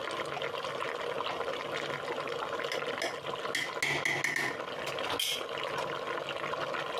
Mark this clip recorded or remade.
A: recorded